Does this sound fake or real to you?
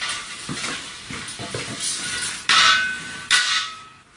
real